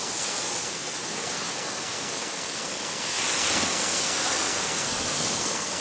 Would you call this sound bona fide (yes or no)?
no